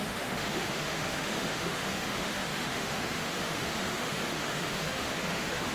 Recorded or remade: remade